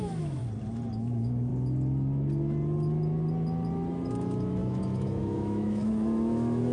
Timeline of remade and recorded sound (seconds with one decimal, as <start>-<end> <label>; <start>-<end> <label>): 0.0-0.4 remade; 0.4-0.9 recorded; 0.9-1.5 remade; 1.5-4.1 recorded; 4.1-6.7 remade